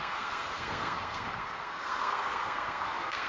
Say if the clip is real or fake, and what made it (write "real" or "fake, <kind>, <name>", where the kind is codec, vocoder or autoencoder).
fake, codec, SNAC